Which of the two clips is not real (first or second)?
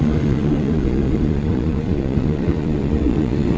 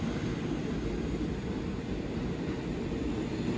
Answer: first